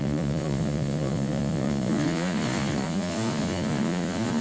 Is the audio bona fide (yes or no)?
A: no